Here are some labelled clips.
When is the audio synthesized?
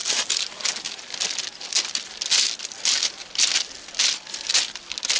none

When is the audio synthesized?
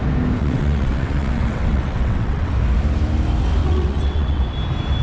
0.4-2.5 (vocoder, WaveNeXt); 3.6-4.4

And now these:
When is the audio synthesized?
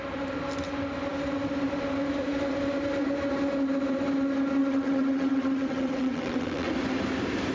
4.6-6.7 (vocoder, WaveNeXt)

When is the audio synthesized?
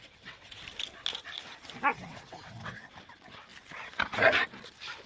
0.0-0.6 (vocoder, WaveNeXt); 1.9-2.9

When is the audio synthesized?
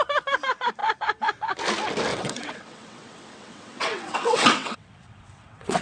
2.1-5.8 (vocoder, WaveNeXt)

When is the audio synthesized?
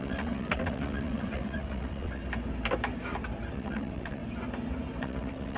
0.0-2.2 (vocoder, WaveNeXt); 3.5-4.2; 5.0-5.6